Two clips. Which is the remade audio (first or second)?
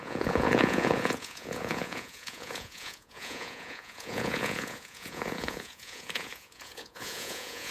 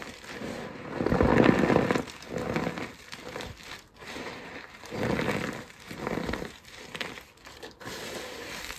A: first